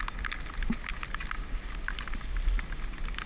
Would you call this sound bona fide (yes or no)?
yes